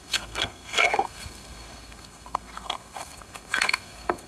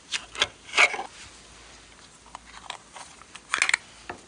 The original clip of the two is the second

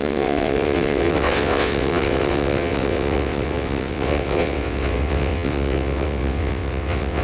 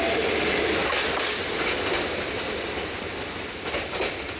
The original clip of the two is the second